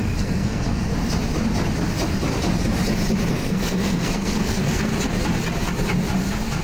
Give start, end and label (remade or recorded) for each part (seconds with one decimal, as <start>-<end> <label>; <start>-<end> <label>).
0.0-0.9 remade; 0.9-3.3 recorded; 3.3-4.9 remade; 4.9-6.6 recorded